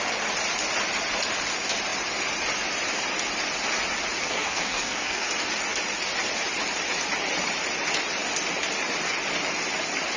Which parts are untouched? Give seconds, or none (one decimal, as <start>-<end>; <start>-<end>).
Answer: 0.0-4.2; 5.3-10.2